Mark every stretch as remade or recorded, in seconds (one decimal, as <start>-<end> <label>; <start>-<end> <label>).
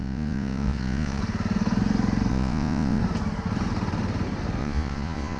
0.0-1.2 remade; 1.2-2.3 recorded; 2.3-3.0 remade; 3.0-4.6 recorded; 4.6-5.4 remade